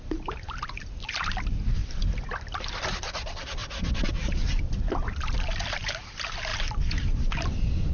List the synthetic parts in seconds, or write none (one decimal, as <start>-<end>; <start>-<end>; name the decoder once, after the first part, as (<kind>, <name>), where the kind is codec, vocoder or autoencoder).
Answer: 0.0-1.8 (vocoder, BigVGAN v2); 2.8-3.6; 4.1-7.9